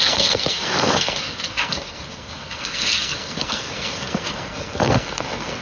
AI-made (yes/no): yes